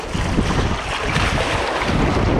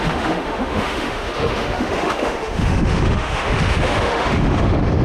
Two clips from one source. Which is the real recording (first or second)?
first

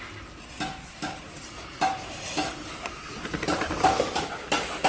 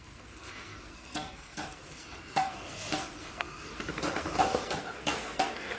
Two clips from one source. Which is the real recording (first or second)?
first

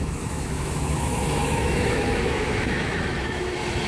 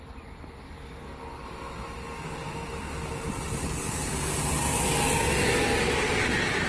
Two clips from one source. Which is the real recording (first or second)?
second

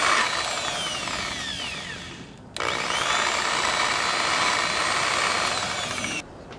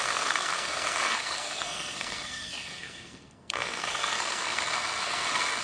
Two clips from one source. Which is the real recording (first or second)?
first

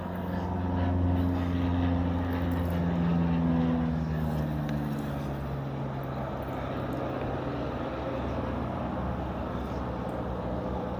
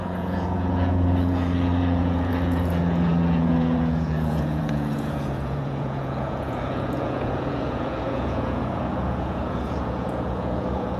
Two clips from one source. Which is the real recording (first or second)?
first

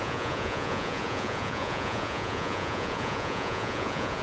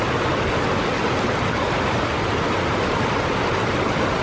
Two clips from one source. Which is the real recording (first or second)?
second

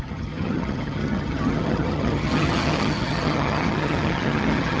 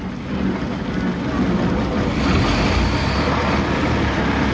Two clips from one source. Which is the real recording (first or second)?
second